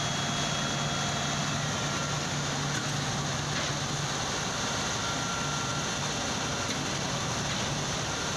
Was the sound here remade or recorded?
recorded